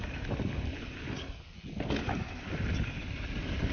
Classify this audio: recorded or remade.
recorded